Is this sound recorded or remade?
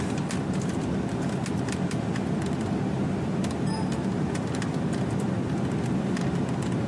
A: recorded